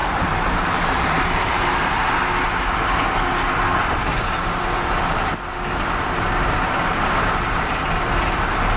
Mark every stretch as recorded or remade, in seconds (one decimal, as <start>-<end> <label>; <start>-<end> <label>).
0.0-1.5 remade; 1.5-8.8 recorded